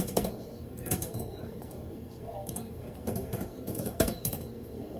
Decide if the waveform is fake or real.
fake